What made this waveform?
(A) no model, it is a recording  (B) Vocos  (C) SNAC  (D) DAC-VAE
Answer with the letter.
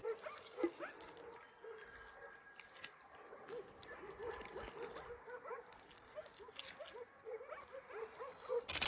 A